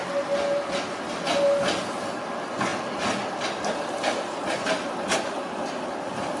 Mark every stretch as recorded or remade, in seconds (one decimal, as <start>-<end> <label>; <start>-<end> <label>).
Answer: 0.0-6.4 recorded